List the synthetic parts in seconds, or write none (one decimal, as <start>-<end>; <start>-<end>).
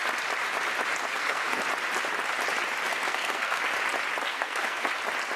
1.1-1.6; 2.9-3.6; 4.3-4.9